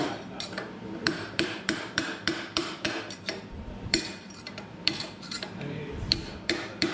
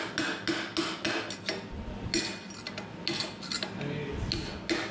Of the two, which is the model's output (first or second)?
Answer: first